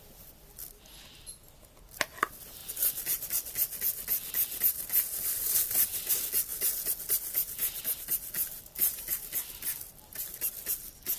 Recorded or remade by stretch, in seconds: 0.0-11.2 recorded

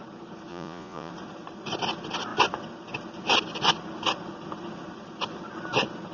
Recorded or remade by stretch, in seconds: 0.0-0.5 recorded; 0.5-1.1 remade; 1.1-6.1 recorded